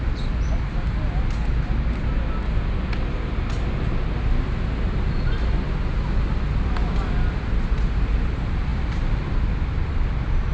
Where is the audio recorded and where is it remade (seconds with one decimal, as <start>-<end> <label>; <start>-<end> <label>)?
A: 0.0-8.7 recorded; 8.7-9.5 remade; 9.5-10.5 recorded